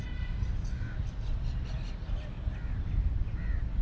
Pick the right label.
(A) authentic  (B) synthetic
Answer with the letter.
A